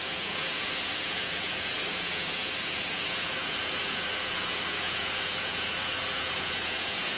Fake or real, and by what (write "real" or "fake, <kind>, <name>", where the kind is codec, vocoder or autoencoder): fake, vocoder, Vocos